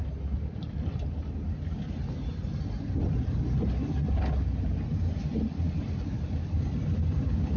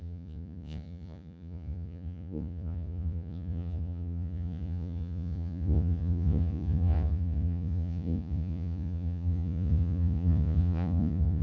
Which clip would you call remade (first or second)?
second